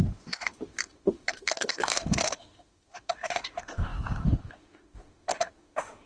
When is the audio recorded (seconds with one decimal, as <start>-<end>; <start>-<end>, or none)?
none